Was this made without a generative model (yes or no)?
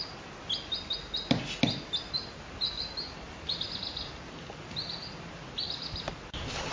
yes